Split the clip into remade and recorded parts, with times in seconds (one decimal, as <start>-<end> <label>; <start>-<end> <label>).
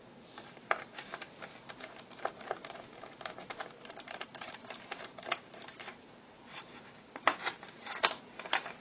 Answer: 0.0-8.8 remade